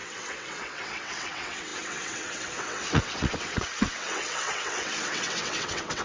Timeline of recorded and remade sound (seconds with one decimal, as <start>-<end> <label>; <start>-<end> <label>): 0.0-6.0 remade